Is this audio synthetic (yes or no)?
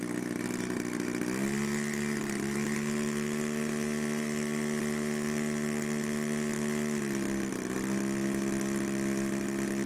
no